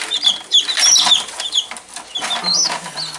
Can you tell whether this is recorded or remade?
recorded